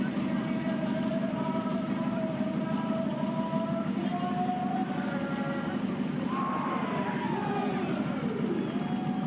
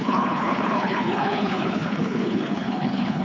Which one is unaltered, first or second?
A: first